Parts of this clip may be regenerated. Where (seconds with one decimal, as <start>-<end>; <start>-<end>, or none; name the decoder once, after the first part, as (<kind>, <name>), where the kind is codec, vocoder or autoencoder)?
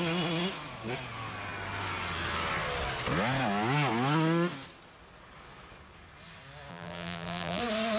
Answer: 6.7-7.6 (vocoder, BigVGAN v2)